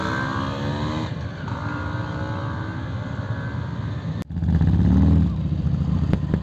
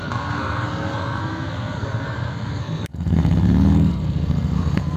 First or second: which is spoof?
second